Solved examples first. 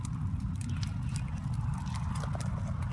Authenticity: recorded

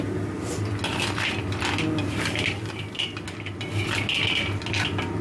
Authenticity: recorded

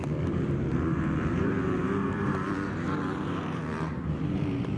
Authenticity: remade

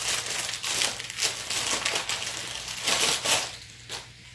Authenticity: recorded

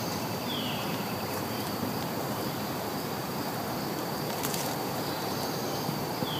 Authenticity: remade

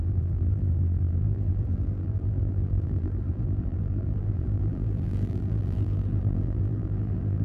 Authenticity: remade